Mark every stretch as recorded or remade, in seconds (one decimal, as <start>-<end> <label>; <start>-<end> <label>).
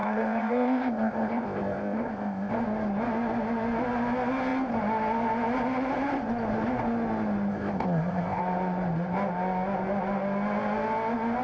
0.0-2.5 remade; 2.5-7.5 recorded; 7.5-8.4 remade; 8.4-11.4 recorded